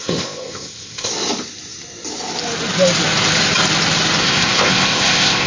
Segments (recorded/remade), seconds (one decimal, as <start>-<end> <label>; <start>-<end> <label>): 0.0-1.1 remade; 1.1-4.2 recorded; 4.2-5.5 remade